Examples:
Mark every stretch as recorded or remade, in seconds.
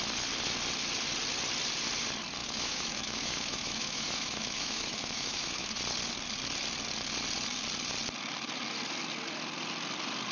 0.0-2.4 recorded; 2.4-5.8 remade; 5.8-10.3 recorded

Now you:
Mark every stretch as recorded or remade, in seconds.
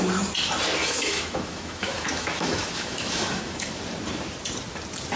0.0-0.8 recorded; 0.8-3.8 remade; 3.8-5.2 recorded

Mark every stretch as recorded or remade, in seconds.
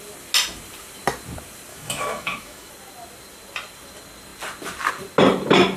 0.0-1.7 recorded; 1.7-2.7 remade; 2.7-5.8 recorded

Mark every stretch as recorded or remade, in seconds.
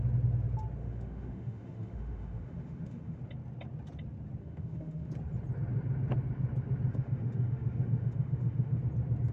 0.0-0.8 recorded; 0.8-3.2 remade; 3.2-4.4 recorded; 4.4-5.1 remade; 5.1-6.9 recorded; 6.9-8.8 remade; 8.8-9.3 recorded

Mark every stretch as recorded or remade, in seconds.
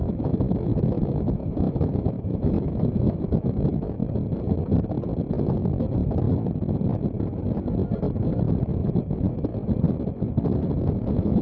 0.0-4.0 remade; 4.0-9.0 recorded; 9.0-9.5 remade; 9.5-10.9 recorded; 10.9-11.4 remade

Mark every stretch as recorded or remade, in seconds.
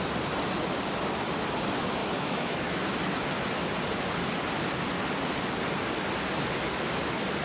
0.0-2.0 recorded; 2.0-2.8 remade; 2.8-7.4 recorded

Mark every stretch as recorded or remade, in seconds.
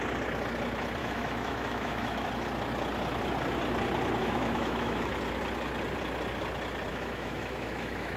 0.0-1.0 recorded; 1.0-2.3 remade; 2.3-4.2 recorded; 4.2-5.1 remade; 5.1-6.9 recorded; 6.9-8.2 remade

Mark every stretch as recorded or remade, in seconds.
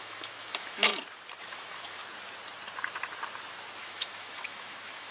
0.0-0.9 remade; 0.9-1.4 recorded; 1.4-2.0 remade; 2.0-3.8 recorded; 3.8-5.1 remade